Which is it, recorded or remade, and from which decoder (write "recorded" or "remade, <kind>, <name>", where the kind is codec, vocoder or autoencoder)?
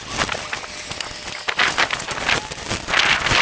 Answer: recorded